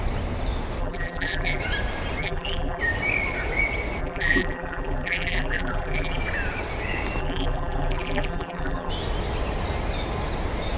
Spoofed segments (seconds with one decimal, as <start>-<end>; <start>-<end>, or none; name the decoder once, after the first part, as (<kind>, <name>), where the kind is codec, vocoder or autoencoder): 0.8-1.6 (vocoder, BigVGAN v2); 2.2-2.8; 4.0-6.2; 7.2-8.9